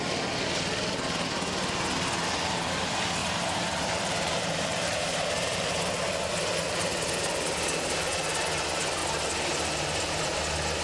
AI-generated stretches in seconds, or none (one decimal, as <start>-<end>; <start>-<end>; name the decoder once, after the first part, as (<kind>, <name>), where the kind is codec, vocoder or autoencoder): 3.2-5.9 (vocoder, BigVGAN v2); 9.0-10.4